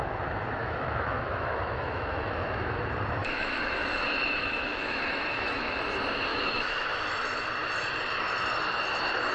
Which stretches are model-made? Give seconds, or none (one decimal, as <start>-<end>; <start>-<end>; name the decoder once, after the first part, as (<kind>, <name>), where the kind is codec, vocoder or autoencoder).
0.6-2.8 (autoencoder, DAC-VAE); 3.2-5.8; 6.3-7.0